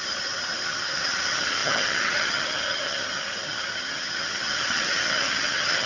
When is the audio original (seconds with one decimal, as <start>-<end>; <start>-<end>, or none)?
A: none